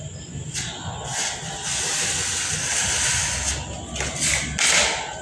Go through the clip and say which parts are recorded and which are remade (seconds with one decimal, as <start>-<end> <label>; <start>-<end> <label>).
0.0-5.2 recorded